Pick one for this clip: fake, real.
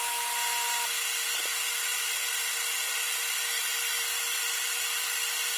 real